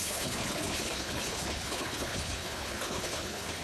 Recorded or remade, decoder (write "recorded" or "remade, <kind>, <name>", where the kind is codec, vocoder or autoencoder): remade, codec, HILCodec